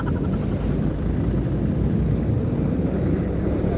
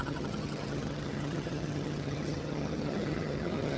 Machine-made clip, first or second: second